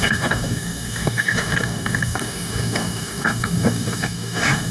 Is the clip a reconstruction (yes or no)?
yes